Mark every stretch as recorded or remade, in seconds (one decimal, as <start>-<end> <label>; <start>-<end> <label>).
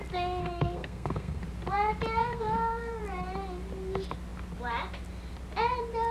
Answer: 0.0-0.4 recorded; 0.4-1.4 remade; 1.4-2.2 recorded; 2.2-3.0 remade; 3.0-6.1 recorded